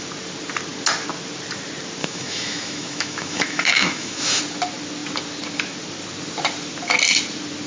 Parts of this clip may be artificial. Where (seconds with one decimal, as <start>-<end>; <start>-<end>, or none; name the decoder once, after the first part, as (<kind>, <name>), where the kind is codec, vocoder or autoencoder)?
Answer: 2.0-4.4 (autoencoder, DAC-VAE)